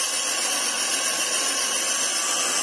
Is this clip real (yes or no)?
yes